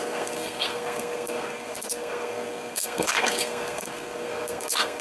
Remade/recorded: remade